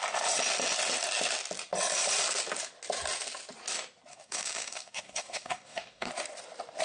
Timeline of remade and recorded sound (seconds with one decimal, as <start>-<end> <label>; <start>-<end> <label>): 0.0-4.1 recorded; 4.1-6.1 remade; 6.1-6.8 recorded